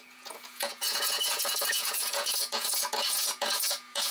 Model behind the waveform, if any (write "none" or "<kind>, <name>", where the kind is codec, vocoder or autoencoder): vocoder, Vocos